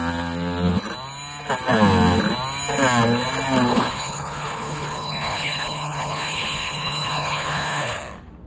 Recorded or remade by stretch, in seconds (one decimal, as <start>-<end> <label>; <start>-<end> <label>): 0.0-3.7 recorded; 3.7-8.0 remade; 8.0-8.5 recorded